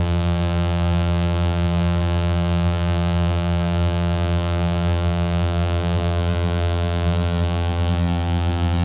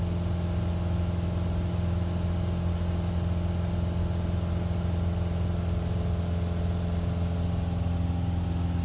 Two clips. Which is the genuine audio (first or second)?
second